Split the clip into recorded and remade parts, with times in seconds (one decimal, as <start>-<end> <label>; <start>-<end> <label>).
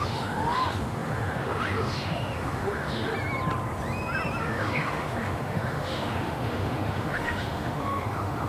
0.0-3.1 remade; 3.1-4.4 recorded; 4.4-8.5 remade